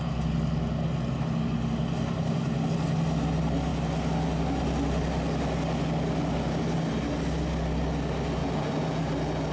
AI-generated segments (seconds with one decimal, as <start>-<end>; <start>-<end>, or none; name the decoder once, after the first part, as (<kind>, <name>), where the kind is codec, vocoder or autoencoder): 8.4-9.0 (vocoder, Vocos)